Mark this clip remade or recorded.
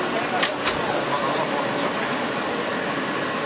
recorded